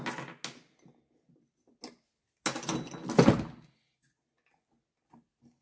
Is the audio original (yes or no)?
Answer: yes